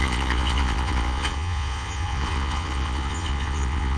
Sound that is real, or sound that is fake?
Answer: fake